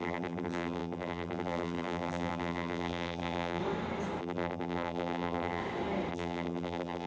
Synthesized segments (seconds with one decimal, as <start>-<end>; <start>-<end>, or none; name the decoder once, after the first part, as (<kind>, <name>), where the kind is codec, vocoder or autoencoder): 0.0-3.6 (vocoder, BigVGAN v2); 4.2-5.6; 6.1-7.1